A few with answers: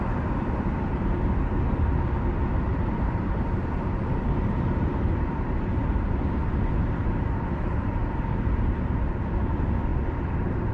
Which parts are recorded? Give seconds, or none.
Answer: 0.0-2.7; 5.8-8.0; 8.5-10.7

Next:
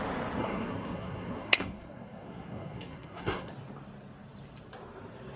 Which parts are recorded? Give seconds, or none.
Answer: 0.0-0.4; 3.5-5.4

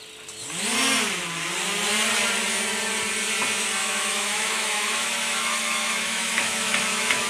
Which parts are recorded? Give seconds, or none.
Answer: 0.0-3.8

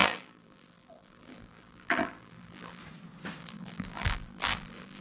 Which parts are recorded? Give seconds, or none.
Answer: 2.8-3.4

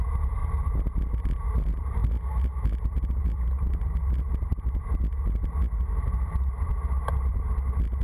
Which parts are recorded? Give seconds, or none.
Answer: 0.0-8.0

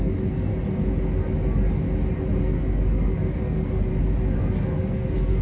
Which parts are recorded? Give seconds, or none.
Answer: 0.5-2.3; 3.9-4.4